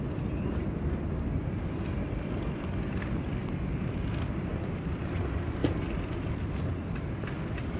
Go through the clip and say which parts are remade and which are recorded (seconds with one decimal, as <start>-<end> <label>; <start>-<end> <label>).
0.0-3.4 remade; 3.4-3.9 recorded; 3.9-7.8 remade